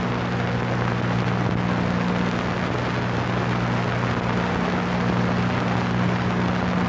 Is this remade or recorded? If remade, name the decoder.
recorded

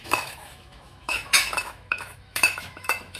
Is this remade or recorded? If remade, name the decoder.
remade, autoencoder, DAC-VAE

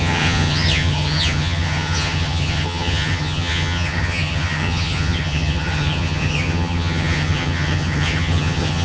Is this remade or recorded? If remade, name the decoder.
remade, vocoder, HiFi-GAN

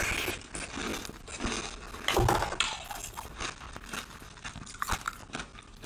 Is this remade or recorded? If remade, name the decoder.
recorded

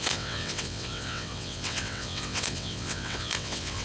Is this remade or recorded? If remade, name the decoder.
remade, vocoder, WaveNeXt